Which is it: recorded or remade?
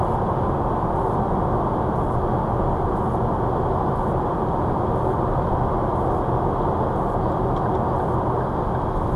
recorded